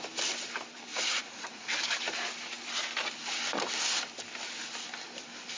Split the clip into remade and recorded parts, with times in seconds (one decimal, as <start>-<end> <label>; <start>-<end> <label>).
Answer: 0.0-0.9 recorded; 0.9-1.7 remade; 1.7-5.6 recorded